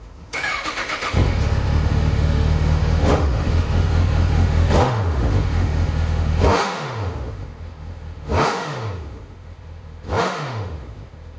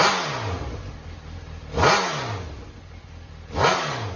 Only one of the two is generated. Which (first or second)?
first